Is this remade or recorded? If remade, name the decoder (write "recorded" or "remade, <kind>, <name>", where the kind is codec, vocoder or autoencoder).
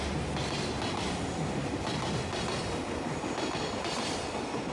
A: recorded